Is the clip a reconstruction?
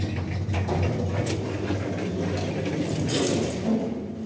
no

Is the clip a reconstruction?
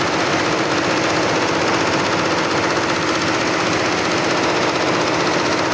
no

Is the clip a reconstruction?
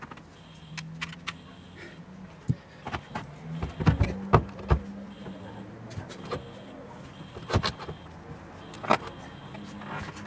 no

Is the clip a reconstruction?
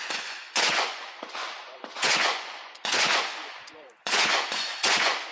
yes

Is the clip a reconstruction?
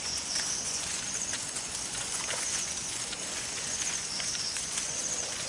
yes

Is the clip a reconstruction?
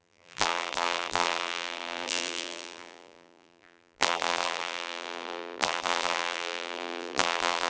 yes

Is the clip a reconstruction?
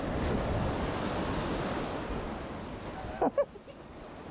no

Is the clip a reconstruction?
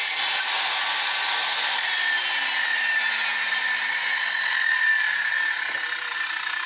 no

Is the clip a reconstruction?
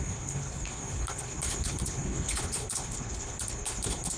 yes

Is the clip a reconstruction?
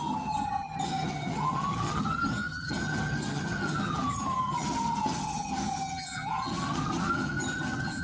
yes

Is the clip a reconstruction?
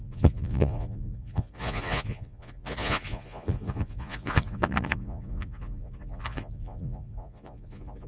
yes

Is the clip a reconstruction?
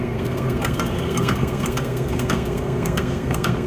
yes